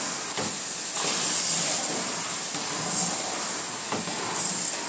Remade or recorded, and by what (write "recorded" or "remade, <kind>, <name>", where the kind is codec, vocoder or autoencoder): recorded